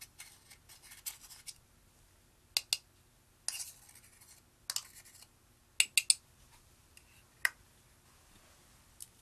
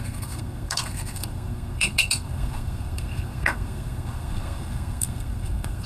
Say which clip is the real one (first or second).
first